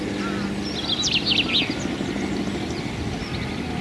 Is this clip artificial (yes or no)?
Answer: no